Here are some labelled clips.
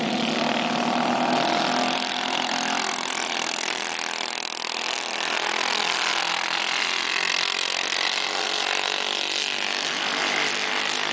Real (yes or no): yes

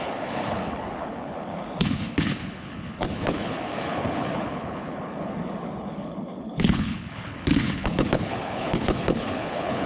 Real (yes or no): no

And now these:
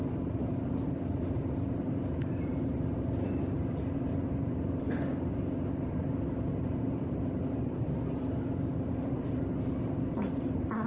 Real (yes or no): yes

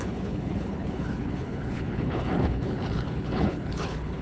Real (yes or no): no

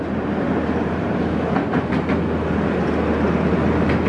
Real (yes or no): yes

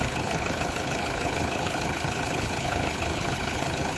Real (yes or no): no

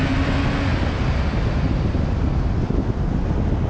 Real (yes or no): yes